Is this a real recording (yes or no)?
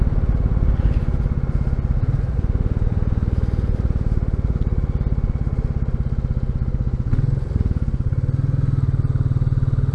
yes